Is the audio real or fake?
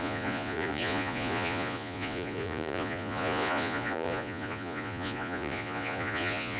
fake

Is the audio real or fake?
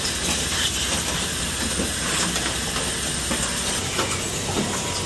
real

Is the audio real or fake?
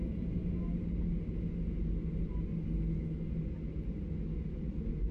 real